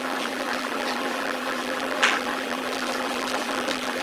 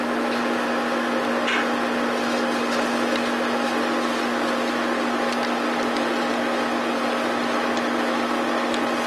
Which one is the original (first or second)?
second